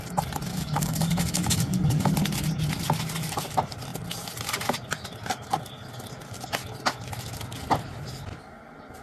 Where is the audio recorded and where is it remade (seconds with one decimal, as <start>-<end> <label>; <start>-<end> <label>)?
0.0-0.5 recorded; 0.5-2.1 remade; 2.1-9.0 recorded